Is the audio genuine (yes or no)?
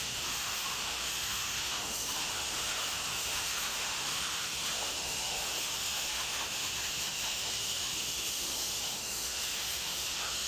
no